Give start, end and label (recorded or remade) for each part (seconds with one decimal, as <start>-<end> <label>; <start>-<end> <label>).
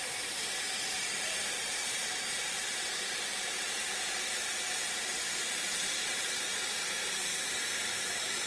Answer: 0.0-5.1 remade; 5.1-7.8 recorded; 7.8-8.5 remade